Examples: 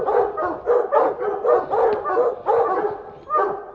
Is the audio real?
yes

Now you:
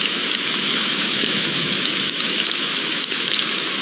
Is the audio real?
no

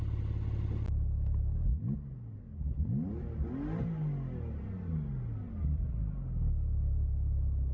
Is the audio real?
yes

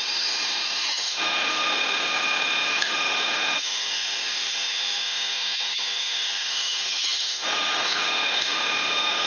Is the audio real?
no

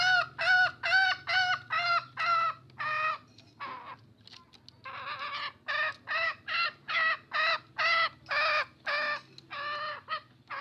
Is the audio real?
yes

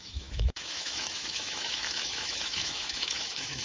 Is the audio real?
no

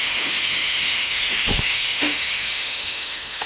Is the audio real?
no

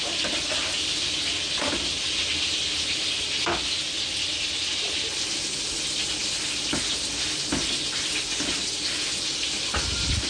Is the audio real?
yes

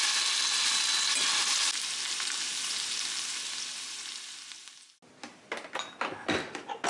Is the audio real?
yes